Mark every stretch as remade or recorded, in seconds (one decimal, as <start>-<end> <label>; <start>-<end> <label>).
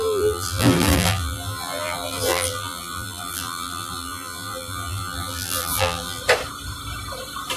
0.0-6.2 remade; 6.2-7.6 recorded